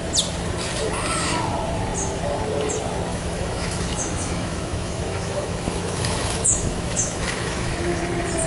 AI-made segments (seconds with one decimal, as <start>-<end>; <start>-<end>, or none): 3.1-8.0